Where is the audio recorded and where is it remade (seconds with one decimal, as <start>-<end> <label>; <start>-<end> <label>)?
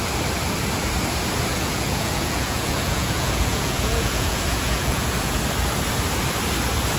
0.0-1.5 recorded; 1.5-5.4 remade; 5.4-7.0 recorded